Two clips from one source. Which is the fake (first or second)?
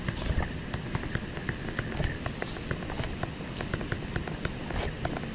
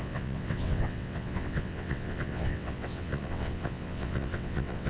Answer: second